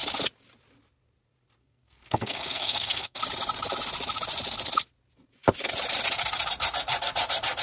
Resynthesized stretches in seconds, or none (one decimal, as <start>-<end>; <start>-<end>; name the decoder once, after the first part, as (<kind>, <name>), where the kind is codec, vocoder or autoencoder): 1.6-3.2 (codec, SNAC)